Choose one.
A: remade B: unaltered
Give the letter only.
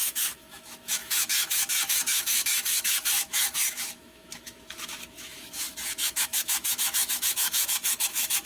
A